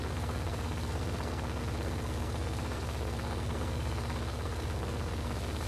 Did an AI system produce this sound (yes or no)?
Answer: yes